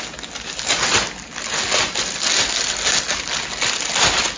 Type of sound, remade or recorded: recorded